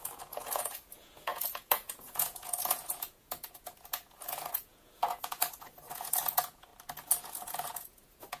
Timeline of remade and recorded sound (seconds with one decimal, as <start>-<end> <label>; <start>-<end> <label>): 0.0-6.7 remade; 6.7-7.2 recorded; 7.2-8.4 remade